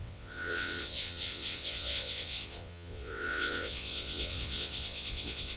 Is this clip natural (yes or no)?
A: no